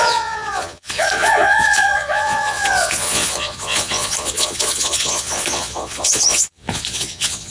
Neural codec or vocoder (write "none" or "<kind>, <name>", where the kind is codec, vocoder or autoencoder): vocoder, Vocos